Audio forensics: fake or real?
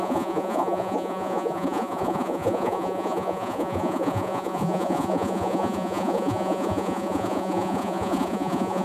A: fake